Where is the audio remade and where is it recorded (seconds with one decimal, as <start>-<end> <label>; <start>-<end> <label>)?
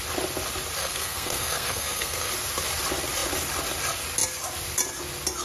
0.0-0.8 recorded; 0.8-2.3 remade; 2.3-5.4 recorded